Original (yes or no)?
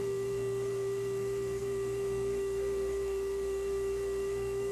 no